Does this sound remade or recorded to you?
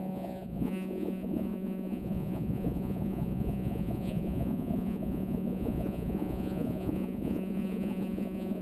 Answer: remade